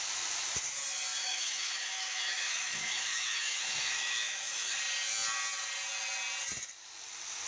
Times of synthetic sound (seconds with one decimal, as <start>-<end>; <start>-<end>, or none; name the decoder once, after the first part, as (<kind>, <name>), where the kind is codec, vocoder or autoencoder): 1.2-4.8 (autoencoder, DAC-VAE)